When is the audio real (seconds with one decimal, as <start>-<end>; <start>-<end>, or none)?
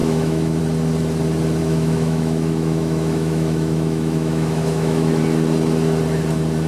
0.6-1.6; 5.2-6.7